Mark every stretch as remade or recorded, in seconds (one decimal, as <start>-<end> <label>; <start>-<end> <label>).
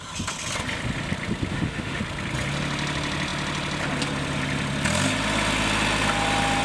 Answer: 0.0-1.5 recorded; 1.5-2.0 remade; 2.0-6.6 recorded